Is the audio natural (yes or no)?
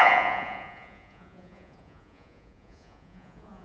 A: no